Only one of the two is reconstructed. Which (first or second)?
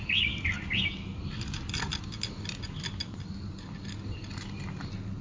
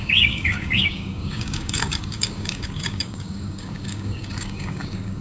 second